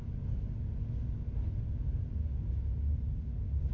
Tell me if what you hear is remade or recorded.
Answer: recorded